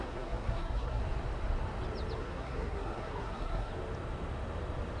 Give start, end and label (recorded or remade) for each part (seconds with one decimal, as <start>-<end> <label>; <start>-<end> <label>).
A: 0.0-1.0 remade; 1.0-2.2 recorded; 2.2-3.7 remade; 3.7-5.0 recorded